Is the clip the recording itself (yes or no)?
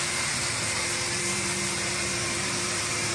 no